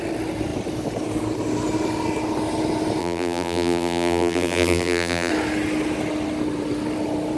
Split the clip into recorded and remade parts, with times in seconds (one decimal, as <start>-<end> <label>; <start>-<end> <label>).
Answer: 0.0-3.0 recorded; 3.0-5.3 remade; 5.3-7.4 recorded